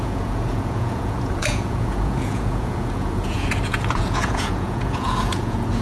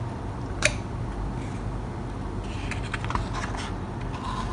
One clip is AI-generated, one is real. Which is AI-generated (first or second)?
first